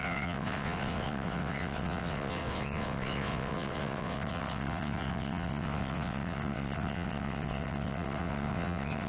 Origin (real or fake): fake